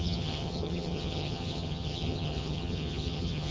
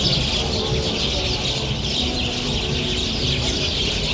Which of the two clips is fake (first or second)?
first